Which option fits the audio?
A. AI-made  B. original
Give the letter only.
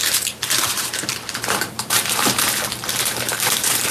A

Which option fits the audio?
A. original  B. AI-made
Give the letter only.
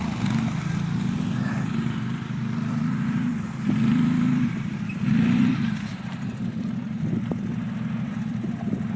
B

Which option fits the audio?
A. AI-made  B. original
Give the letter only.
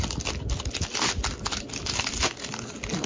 B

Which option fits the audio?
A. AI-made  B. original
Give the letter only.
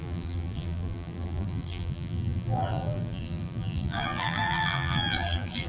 A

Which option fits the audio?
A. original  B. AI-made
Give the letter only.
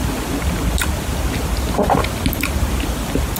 A